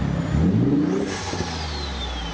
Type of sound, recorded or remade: recorded